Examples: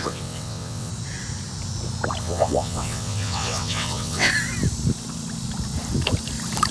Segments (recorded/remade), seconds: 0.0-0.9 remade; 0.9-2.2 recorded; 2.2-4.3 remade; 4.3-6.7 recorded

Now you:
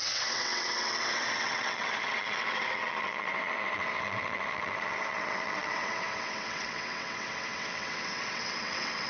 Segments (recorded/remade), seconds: 0.0-9.1 remade

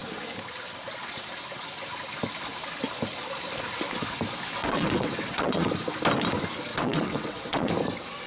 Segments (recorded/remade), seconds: 0.0-4.6 recorded; 4.6-5.7 remade; 5.7-6.7 recorded; 6.7-7.7 remade; 7.7-8.3 recorded

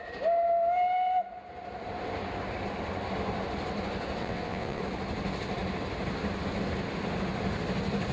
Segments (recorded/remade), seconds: 0.0-4.2 recorded; 4.2-4.8 remade; 4.8-8.1 recorded

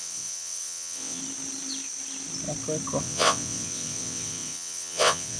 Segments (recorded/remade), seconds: 0.0-1.2 remade; 1.2-3.0 recorded; 3.0-5.4 remade